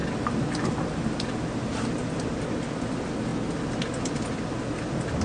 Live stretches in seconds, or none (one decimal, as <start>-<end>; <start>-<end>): 0.0-5.2